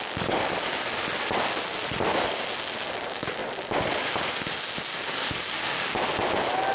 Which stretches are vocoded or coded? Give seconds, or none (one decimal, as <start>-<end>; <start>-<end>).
none